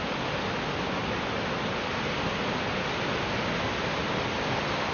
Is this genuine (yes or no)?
yes